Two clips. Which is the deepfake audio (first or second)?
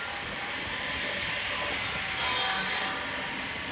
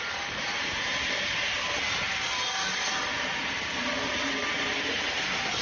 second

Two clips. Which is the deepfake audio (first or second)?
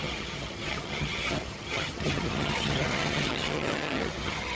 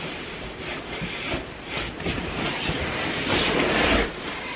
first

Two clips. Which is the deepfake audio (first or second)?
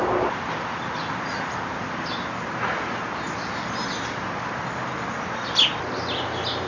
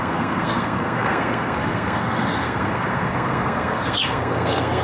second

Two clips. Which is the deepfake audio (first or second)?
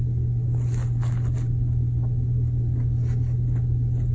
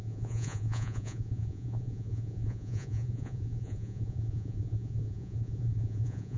second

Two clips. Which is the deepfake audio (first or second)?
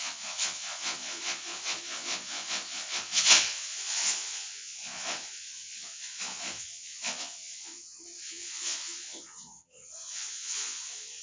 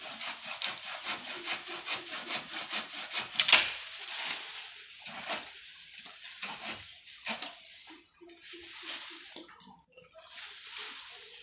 first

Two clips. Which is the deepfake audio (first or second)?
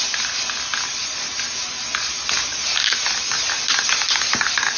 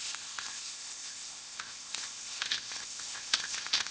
second